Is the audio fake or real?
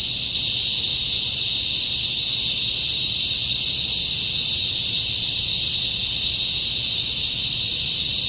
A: real